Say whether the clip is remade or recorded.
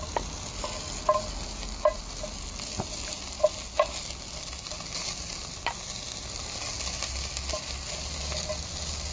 recorded